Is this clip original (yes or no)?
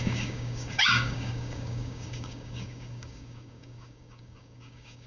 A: no